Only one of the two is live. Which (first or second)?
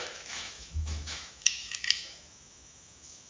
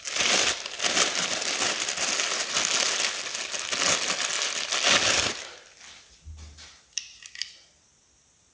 second